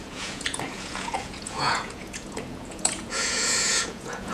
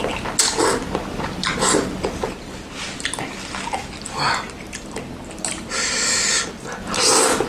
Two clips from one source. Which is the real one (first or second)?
second